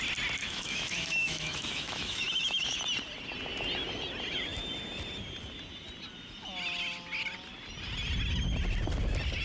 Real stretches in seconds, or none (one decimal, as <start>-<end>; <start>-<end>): 0.0-0.4; 2.8-9.4